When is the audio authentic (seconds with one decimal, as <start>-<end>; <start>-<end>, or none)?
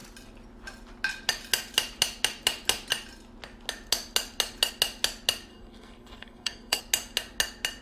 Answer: 0.0-5.5; 6.8-7.8